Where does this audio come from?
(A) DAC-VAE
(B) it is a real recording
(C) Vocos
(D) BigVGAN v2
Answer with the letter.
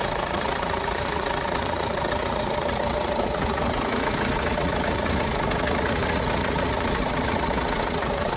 C